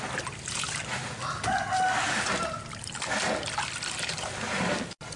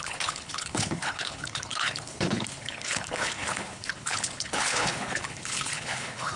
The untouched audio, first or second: first